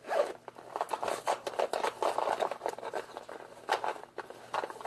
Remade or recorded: recorded